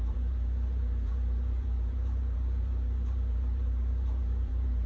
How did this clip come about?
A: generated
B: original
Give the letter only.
A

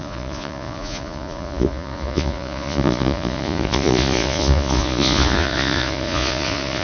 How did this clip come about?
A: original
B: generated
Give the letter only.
B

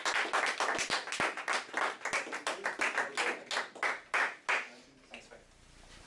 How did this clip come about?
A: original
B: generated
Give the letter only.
A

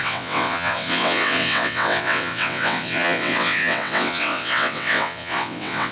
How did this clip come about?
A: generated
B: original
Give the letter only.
A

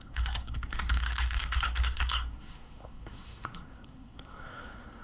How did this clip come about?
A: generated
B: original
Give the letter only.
A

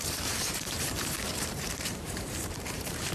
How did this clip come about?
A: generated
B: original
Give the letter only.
A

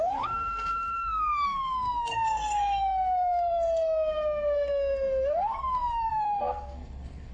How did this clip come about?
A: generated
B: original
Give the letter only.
A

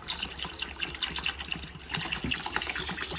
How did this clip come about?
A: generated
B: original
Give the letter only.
B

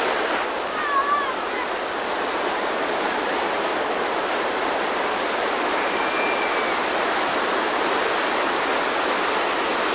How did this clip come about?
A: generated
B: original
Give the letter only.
B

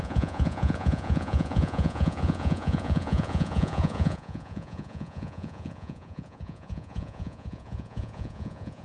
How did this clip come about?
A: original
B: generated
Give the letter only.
B